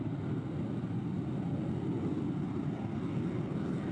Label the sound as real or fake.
real